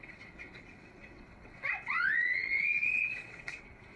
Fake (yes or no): yes